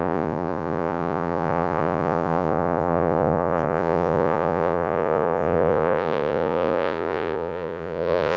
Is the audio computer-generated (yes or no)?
yes